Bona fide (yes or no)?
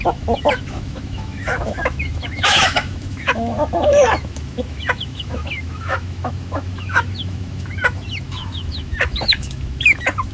no